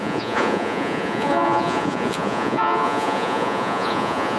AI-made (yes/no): yes